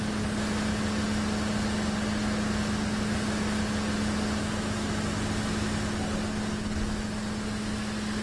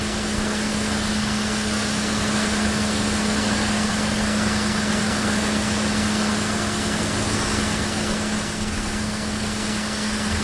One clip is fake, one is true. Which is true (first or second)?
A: first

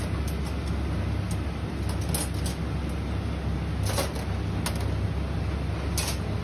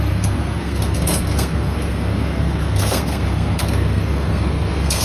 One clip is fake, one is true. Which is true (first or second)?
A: first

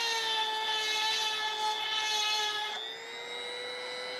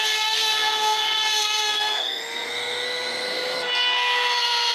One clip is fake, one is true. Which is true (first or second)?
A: first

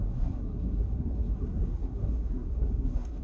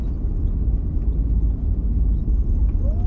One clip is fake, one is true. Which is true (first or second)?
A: second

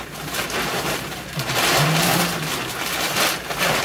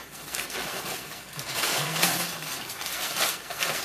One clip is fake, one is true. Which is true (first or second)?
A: first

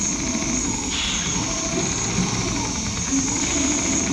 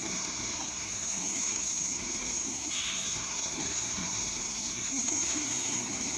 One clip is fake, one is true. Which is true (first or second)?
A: first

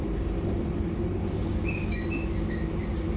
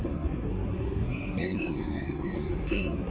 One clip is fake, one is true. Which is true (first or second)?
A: first